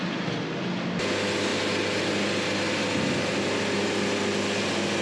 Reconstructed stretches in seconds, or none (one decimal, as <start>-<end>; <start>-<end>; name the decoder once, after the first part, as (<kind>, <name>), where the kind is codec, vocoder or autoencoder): none